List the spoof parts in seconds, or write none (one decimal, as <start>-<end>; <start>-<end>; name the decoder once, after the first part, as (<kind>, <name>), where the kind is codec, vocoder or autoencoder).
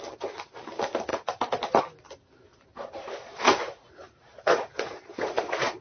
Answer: 2.7-5.8 (vocoder, Vocos)